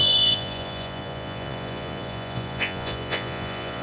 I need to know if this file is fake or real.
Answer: fake